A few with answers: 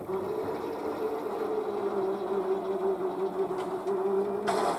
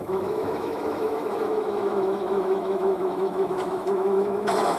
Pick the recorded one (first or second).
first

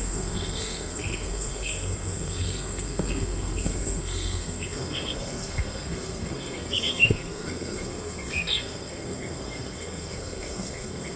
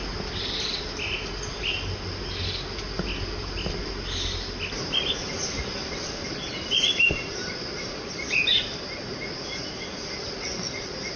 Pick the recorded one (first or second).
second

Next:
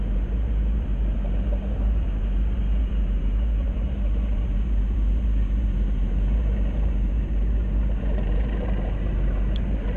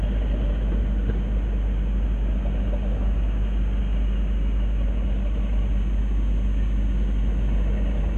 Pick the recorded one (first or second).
second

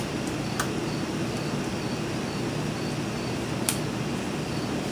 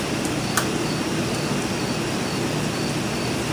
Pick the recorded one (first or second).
first